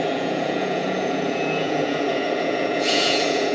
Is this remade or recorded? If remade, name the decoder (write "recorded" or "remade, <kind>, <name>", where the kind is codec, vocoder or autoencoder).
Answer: remade, vocoder, Vocos